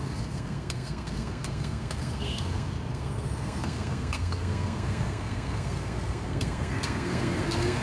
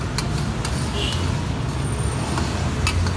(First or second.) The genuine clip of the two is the second